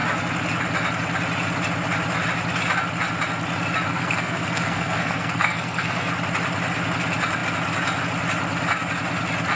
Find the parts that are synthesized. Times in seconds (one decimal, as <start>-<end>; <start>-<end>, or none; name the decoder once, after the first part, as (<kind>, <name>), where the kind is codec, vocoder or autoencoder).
3.9-6.1 (codec, SNAC)